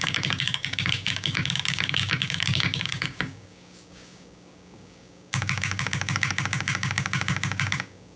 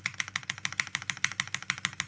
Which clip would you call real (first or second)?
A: second